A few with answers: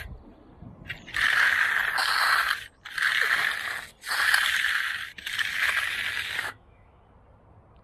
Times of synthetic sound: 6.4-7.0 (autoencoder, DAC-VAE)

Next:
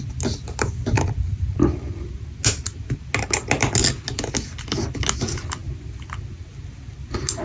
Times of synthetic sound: none